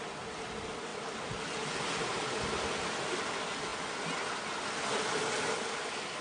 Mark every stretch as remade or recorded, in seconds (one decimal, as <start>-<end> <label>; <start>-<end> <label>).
0.0-6.2 recorded